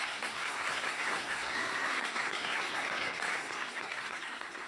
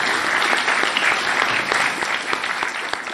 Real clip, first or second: second